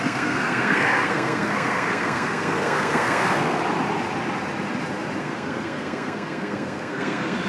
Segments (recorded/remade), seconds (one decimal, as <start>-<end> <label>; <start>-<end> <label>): 0.0-3.6 remade; 3.6-5.2 recorded; 5.2-7.5 remade